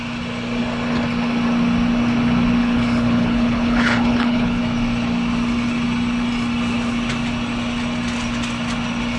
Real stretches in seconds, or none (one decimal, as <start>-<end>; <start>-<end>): 0.0-2.6; 4.6-9.2